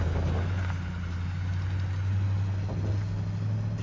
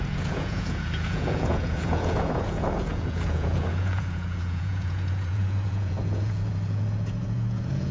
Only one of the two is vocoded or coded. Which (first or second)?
second